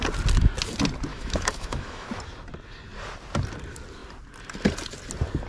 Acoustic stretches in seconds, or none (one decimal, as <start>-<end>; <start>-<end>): 0.0-1.1; 2.1-5.5